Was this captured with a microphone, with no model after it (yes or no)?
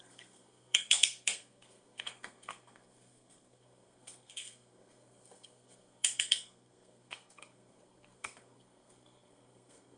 no